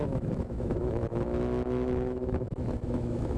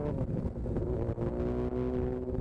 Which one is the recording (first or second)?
second